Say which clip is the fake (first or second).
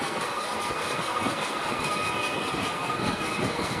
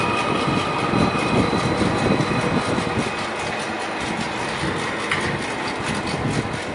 first